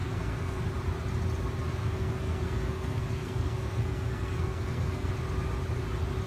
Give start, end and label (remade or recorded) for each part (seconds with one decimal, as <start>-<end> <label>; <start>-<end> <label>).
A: 0.0-0.6 remade; 0.6-1.8 recorded; 1.8-5.1 remade; 5.1-6.3 recorded